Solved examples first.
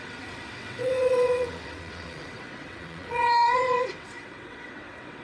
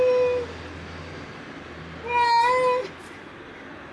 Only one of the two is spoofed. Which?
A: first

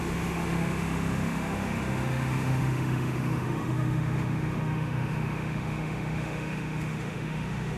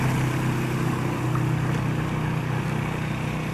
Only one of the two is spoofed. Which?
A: first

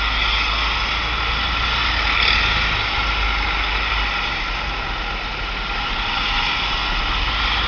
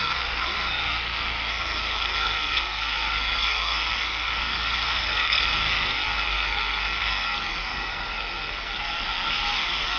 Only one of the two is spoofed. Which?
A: second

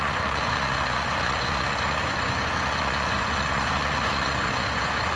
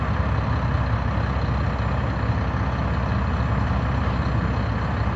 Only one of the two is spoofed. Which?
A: first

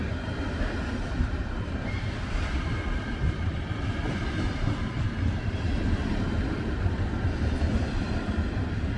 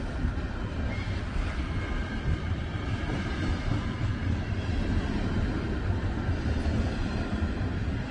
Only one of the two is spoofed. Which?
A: first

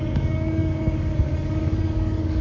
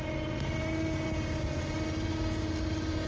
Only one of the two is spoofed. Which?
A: first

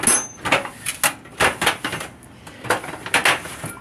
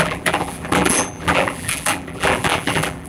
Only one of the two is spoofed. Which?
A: second